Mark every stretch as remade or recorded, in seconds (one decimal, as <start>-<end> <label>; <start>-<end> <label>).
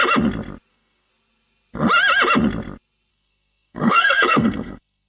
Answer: 0.0-0.7 recorded; 0.7-1.1 remade; 1.1-3.1 recorded; 3.1-5.1 remade